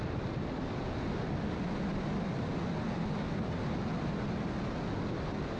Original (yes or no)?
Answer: yes